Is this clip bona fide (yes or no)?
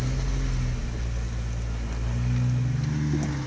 yes